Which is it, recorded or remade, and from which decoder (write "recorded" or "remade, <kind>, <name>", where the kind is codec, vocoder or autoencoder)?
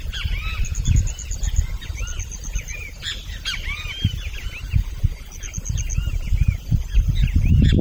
recorded